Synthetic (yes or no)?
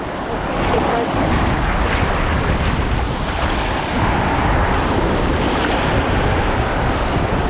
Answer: no